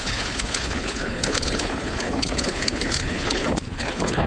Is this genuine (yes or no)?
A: no